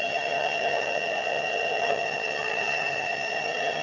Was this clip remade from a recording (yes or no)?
yes